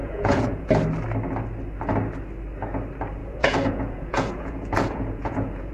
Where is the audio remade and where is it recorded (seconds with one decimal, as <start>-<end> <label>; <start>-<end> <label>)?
0.0-0.7 remade; 0.7-3.2 recorded; 3.2-5.7 remade